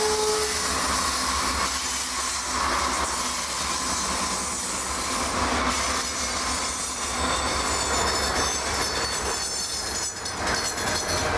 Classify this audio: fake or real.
real